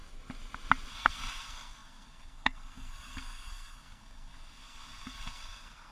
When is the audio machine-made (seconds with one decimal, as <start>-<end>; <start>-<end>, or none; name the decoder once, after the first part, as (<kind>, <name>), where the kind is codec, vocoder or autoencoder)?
0.9-5.9 (codec, SNAC)